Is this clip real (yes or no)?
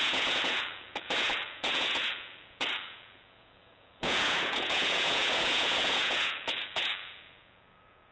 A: no